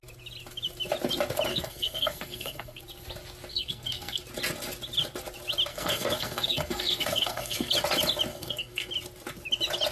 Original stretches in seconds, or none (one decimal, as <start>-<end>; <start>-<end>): 0.0-1.5; 2.8-3.5; 4.2-5.7; 7.7-8.3; 8.9-9.9